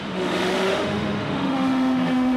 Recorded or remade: remade